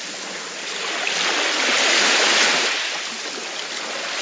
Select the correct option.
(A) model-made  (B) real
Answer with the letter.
B